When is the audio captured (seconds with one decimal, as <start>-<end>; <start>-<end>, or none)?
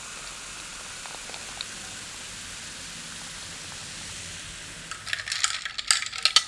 0.0-6.5